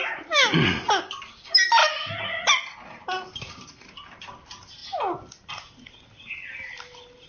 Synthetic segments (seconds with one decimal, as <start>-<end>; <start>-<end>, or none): none